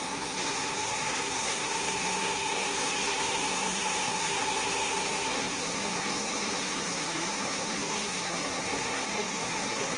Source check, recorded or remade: remade